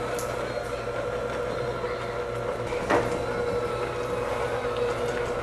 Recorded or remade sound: recorded